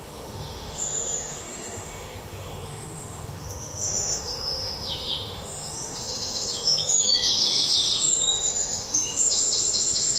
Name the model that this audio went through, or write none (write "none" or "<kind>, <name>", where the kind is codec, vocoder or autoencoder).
autoencoder, DAC-VAE